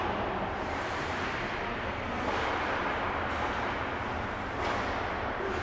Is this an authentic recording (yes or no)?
yes